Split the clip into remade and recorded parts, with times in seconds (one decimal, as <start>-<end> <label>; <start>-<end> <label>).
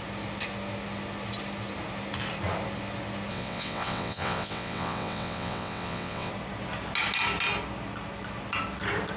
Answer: 0.0-3.3 recorded; 3.3-6.3 remade; 6.3-9.2 recorded